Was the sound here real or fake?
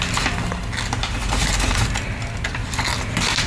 real